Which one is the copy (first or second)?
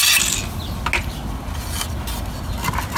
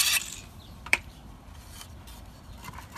second